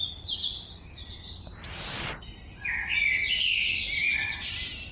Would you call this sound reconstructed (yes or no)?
no